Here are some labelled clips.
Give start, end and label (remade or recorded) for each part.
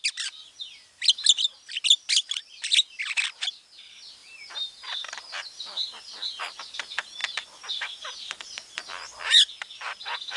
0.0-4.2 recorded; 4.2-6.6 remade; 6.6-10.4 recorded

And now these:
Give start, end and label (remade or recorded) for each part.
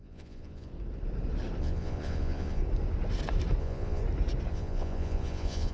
0.0-0.7 remade; 0.7-1.6 recorded; 1.6-2.6 remade; 2.6-3.6 recorded; 3.6-4.0 remade; 4.0-4.5 recorded; 4.5-5.7 remade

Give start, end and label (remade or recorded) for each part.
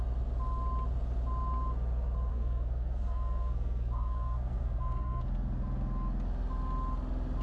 0.0-2.3 recorded; 2.3-5.2 remade; 5.2-7.4 recorded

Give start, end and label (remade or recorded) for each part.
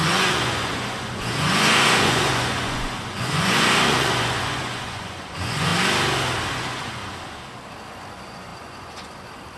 0.0-5.7 remade; 5.7-6.5 recorded; 6.5-7.0 remade; 7.0-7.9 recorded; 7.9-9.6 remade